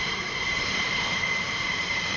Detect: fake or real fake